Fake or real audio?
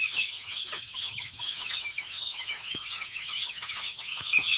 fake